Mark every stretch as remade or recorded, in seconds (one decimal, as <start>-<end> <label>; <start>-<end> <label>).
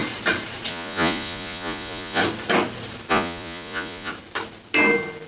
0.0-0.7 recorded; 0.7-2.2 remade; 2.2-3.1 recorded; 3.1-4.1 remade; 4.1-5.3 recorded